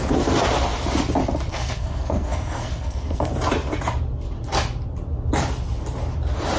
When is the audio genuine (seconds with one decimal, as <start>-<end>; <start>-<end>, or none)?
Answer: 0.0-1.5; 3.3-6.6